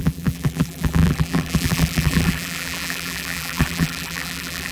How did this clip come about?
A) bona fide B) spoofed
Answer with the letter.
B